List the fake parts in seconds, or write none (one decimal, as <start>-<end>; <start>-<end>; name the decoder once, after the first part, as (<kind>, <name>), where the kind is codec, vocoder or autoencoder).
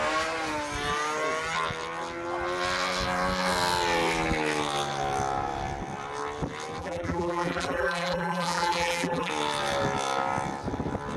6.8-9.3 (vocoder, BigVGAN v2)